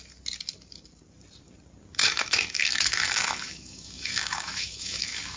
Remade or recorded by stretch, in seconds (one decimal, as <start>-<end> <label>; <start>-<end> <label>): 0.0-2.0 recorded; 2.0-5.4 remade